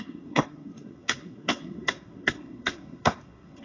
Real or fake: fake